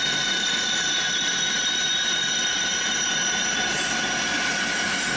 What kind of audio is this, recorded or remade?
recorded